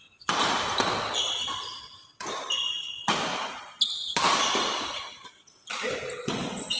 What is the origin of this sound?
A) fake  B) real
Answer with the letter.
B